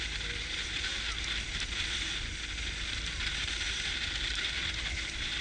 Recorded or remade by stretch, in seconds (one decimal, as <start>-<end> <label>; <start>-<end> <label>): 0.0-0.9 remade; 0.9-3.1 recorded; 3.1-4.6 remade; 4.6-5.4 recorded